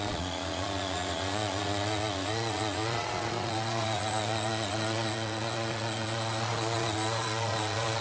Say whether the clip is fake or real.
fake